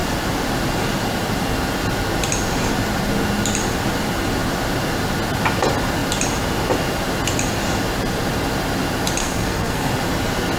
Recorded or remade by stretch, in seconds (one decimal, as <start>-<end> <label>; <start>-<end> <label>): 0.0-9.2 recorded; 9.2-9.9 remade; 9.9-10.6 recorded